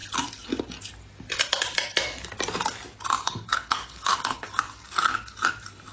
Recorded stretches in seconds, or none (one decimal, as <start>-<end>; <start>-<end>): 0.0-3.2; 4.5-5.9